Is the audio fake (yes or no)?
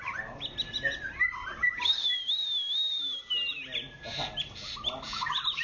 no